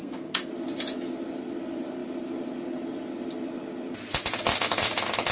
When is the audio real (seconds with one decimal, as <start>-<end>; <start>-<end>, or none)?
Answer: 0.5-5.3